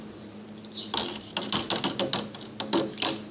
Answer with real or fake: real